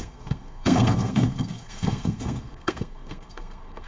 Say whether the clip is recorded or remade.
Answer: remade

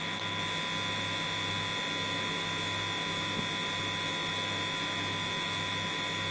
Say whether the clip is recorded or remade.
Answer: recorded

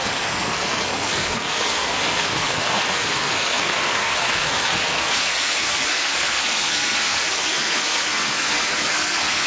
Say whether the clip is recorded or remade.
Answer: remade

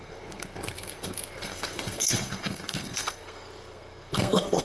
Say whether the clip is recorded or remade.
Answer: remade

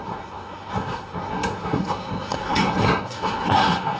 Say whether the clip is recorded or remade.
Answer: remade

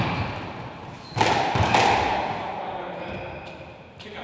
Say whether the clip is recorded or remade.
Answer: recorded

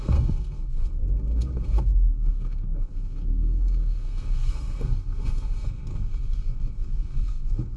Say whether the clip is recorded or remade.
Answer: remade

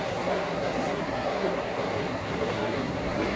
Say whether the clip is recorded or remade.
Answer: remade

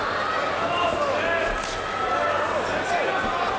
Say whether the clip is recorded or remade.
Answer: recorded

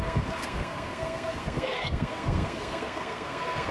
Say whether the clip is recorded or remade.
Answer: remade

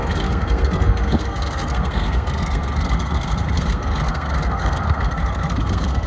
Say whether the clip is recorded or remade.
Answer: remade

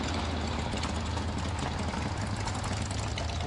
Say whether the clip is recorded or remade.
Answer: recorded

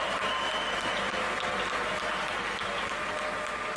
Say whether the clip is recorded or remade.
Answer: recorded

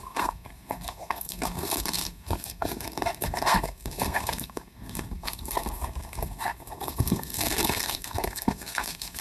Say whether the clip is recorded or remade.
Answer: remade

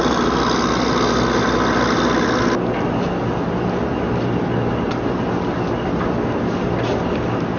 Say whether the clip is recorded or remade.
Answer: recorded